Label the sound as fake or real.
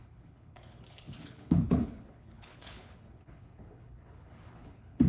fake